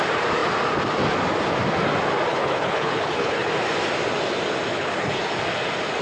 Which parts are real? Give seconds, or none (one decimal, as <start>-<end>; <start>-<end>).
0.0-2.3; 3.5-4.7; 5.2-6.0